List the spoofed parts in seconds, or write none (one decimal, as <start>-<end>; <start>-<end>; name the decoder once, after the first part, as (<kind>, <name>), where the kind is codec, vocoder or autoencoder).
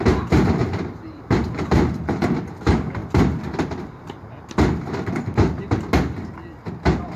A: 0.6-2.4 (vocoder, BigVGAN v2)